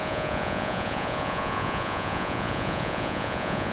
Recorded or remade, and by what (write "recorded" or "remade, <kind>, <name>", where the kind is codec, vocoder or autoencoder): remade, vocoder, Vocos